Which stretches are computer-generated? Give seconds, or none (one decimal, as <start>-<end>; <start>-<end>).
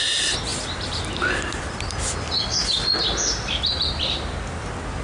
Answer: none